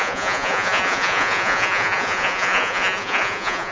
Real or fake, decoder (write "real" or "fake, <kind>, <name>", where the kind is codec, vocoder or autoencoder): fake, vocoder, Vocos